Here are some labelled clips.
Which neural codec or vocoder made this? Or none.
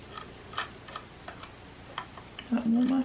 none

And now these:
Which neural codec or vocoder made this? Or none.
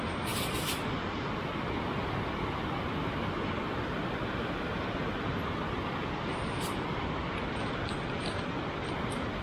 none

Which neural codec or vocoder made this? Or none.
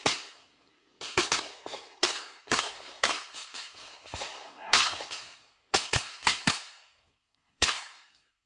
codec, SNAC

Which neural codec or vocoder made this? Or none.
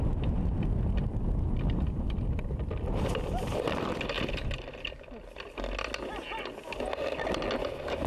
none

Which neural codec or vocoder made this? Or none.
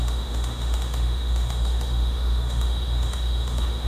autoencoder, DAC-VAE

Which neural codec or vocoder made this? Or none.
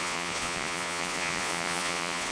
vocoder, Vocos